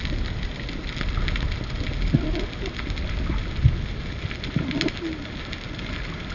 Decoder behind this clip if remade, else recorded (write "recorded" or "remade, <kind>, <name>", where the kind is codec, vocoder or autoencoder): recorded